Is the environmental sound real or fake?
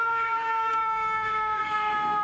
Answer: fake